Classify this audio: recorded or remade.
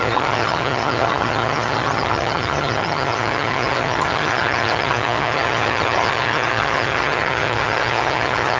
remade